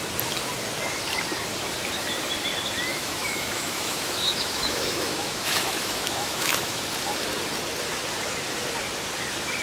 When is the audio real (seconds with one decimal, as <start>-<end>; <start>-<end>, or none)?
0.0-2.9; 6.8-9.6